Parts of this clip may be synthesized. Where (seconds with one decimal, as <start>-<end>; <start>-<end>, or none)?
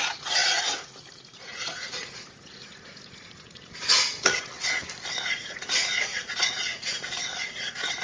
0.0-4.5; 5.2-8.0